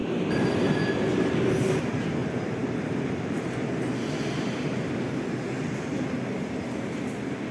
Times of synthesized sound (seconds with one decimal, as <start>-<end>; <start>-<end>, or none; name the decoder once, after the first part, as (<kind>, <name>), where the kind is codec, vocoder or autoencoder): 0.0-0.9 (vocoder, BigVGAN v2)